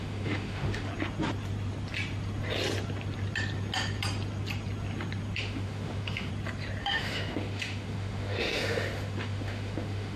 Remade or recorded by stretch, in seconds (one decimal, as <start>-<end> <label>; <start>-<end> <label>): 0.0-0.9 remade; 0.9-5.4 recorded; 5.4-6.3 remade; 6.3-6.8 recorded; 6.8-10.2 remade

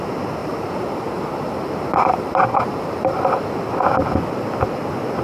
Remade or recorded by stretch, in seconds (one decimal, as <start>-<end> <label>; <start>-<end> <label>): 0.0-0.4 recorded; 0.4-3.5 remade; 3.5-5.2 recorded

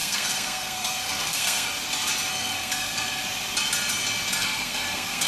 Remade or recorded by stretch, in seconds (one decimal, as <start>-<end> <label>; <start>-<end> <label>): 0.0-1.7 remade; 1.7-2.3 recorded; 2.3-3.2 remade; 3.2-4.4 recorded; 4.4-5.3 remade